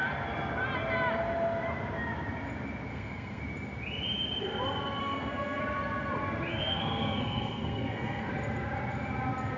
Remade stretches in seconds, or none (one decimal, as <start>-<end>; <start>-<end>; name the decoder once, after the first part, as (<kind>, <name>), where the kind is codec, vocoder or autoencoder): 2.9-3.4 (codec, SNAC); 5.0-5.6; 6.5-8.3